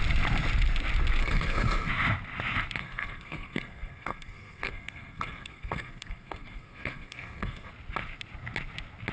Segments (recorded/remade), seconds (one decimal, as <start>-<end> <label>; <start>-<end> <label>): 0.0-1.2 recorded; 1.2-1.9 remade; 1.9-2.8 recorded; 2.8-7.7 remade; 7.7-9.1 recorded